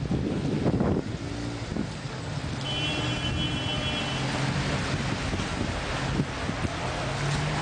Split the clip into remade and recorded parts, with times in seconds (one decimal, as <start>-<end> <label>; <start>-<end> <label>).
0.0-7.6 recorded